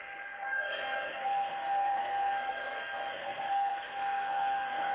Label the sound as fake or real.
fake